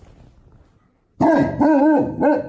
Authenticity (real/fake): real